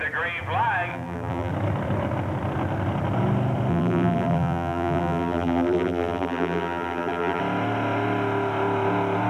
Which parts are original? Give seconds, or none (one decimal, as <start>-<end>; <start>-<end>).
0.0-0.9; 1.5-3.7; 7.4-9.3